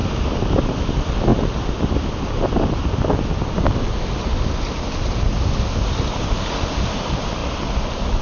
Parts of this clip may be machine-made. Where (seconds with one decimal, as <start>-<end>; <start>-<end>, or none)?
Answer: none